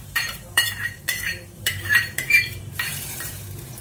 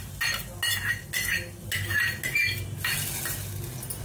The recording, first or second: second